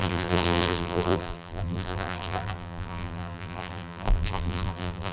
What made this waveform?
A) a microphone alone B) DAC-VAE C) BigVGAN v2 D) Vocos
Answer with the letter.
C